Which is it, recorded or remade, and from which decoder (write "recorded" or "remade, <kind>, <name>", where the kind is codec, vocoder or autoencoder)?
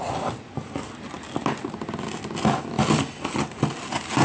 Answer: recorded